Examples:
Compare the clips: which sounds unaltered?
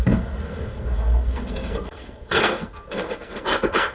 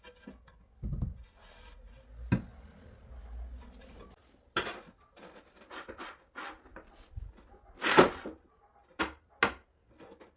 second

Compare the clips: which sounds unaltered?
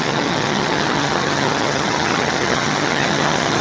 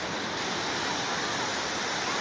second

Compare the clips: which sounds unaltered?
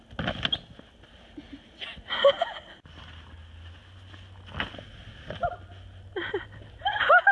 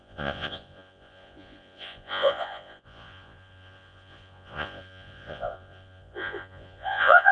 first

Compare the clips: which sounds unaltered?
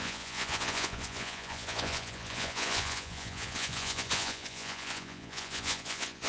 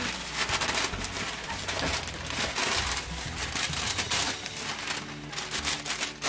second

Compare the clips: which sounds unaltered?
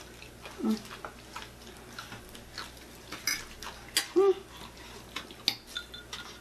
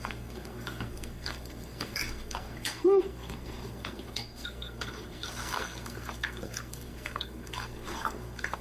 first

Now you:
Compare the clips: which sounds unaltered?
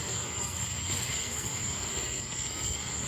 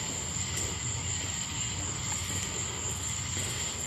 second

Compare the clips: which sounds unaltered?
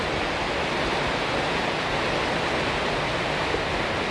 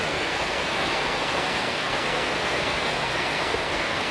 first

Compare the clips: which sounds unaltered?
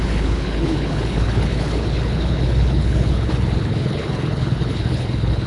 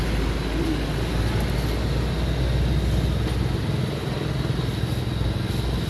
second